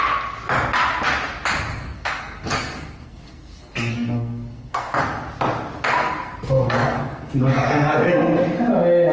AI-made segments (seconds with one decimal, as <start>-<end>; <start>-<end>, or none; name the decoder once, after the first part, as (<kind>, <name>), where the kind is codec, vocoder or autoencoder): 1.7-5.0 (codec, SNAC); 6.0-7.3